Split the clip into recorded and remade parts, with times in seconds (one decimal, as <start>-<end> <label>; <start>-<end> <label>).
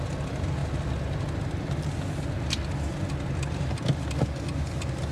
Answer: 0.0-5.1 recorded